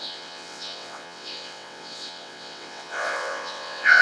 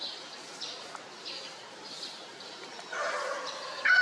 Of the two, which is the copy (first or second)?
first